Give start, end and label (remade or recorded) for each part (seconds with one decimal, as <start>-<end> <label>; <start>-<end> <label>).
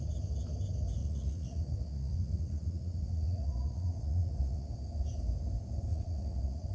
0.0-1.0 recorded; 1.0-4.7 remade; 4.7-5.9 recorded; 5.9-6.7 remade